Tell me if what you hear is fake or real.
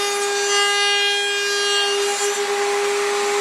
real